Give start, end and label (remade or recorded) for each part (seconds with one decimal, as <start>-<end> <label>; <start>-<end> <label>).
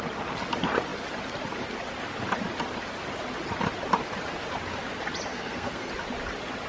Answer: 0.0-5.3 recorded; 5.3-5.9 remade; 5.9-6.7 recorded